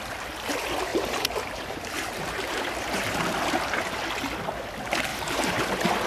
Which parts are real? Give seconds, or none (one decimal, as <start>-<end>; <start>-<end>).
0.0-0.9; 4.0-5.1; 5.6-6.1